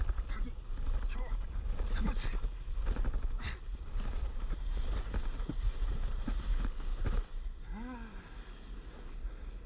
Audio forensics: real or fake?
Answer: real